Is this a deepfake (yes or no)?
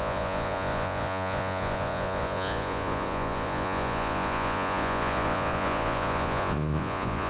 yes